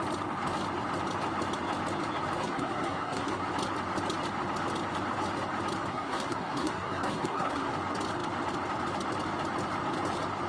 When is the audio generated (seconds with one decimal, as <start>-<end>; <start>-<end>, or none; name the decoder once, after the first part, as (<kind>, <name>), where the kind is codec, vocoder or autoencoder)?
2.4-3.4 (codec, SNAC); 5.9-7.7